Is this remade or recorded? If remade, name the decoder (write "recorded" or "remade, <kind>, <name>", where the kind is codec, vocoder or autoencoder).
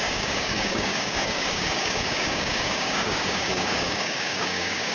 remade, codec, DAC